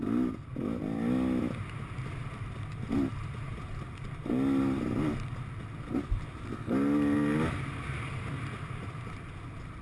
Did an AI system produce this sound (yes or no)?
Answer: no